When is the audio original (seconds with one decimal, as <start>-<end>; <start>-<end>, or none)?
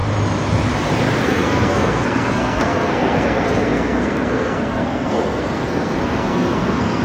0.0-1.2